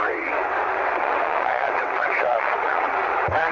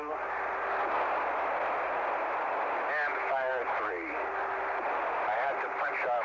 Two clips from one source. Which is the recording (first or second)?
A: second